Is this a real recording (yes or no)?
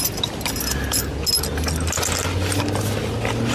yes